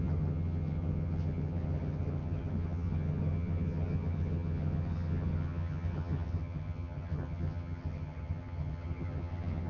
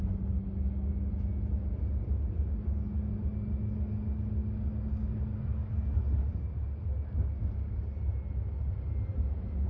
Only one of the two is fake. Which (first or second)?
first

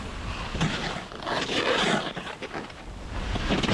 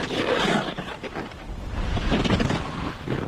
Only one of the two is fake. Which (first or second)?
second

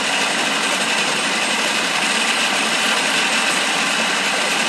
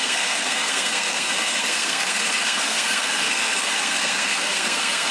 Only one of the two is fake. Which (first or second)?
second